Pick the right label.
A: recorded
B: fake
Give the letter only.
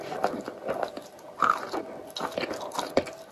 A